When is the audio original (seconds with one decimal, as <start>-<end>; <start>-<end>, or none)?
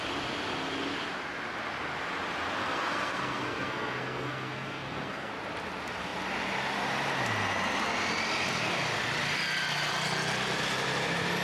0.0-2.6; 5.3-11.4